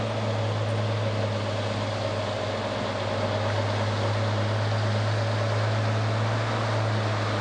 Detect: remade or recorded recorded